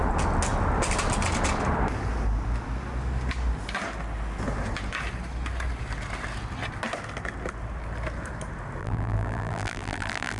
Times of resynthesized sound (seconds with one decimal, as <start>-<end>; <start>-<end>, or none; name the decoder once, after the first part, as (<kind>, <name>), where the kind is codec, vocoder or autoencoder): 8.8-10.4 (vocoder, BigVGAN v2)